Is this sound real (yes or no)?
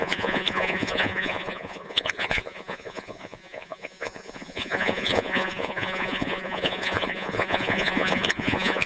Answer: no